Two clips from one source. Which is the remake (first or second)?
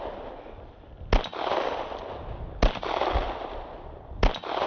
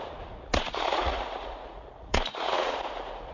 second